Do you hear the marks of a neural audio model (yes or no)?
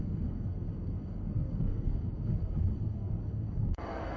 yes